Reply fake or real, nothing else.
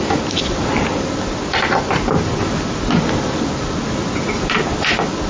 real